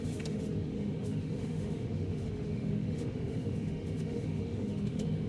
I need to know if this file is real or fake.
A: fake